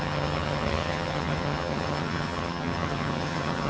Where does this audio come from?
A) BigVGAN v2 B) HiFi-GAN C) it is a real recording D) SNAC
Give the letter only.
B